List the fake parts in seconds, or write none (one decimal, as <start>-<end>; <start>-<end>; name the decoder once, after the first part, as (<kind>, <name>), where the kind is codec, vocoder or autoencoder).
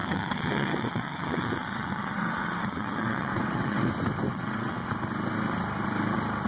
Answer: 0.0-3.9 (vocoder, WaveNeXt); 4.3-4.9